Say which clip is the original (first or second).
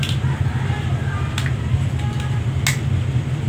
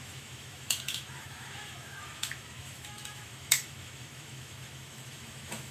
first